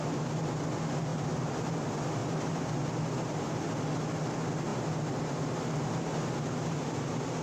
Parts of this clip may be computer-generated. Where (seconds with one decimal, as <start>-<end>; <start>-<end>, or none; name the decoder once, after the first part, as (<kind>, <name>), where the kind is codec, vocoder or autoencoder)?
none